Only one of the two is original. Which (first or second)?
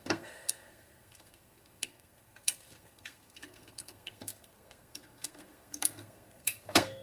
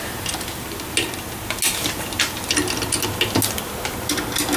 second